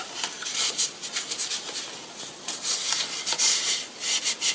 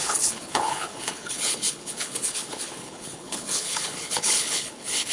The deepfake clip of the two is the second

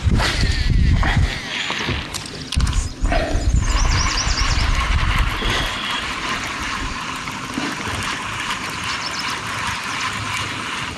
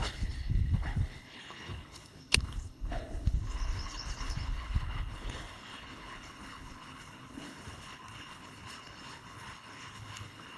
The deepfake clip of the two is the second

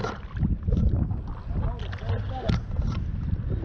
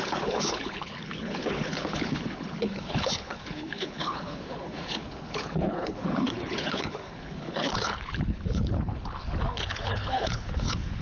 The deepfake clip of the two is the second